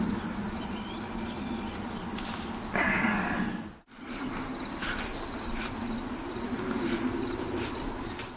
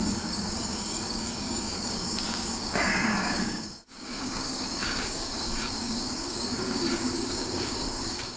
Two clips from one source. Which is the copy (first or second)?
second